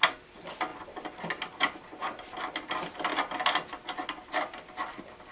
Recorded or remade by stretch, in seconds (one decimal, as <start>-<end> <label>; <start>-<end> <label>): 0.0-5.3 recorded